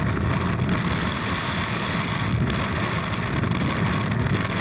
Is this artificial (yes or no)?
no